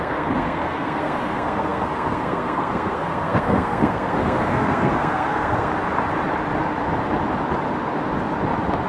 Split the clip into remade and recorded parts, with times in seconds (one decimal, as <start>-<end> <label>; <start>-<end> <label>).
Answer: 0.0-5.7 remade; 5.7-8.9 recorded